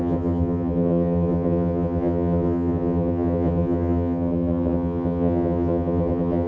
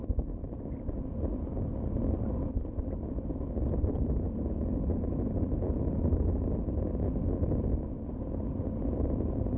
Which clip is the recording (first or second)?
second